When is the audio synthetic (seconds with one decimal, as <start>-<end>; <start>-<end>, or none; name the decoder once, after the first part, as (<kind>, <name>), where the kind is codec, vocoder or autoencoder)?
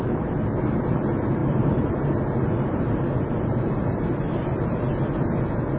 0.0-4.9 (vocoder, BigVGAN v2)